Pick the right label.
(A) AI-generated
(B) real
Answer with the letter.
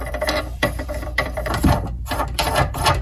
A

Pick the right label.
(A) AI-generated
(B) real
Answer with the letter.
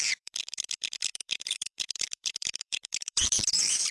A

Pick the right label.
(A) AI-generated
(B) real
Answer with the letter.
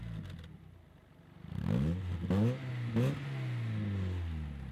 B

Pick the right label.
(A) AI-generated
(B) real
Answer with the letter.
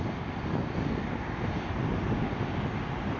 B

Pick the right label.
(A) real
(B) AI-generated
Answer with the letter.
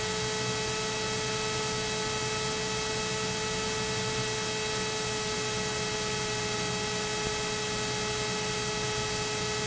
A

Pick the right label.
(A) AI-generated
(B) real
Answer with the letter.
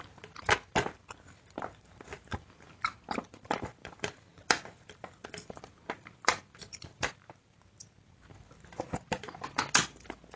A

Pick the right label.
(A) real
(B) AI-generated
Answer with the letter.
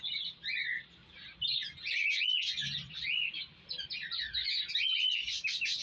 A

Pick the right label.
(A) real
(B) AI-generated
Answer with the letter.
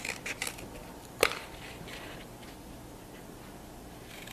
B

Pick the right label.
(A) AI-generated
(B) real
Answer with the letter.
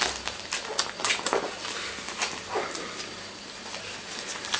B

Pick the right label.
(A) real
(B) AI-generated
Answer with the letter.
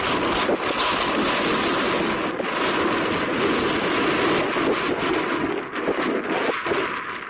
A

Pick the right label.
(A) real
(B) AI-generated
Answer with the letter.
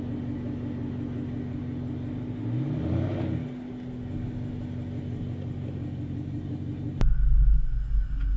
A